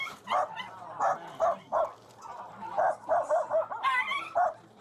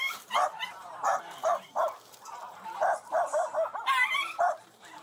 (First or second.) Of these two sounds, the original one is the first